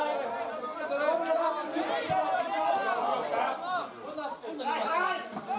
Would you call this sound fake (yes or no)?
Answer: no